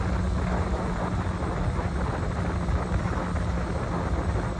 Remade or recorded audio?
recorded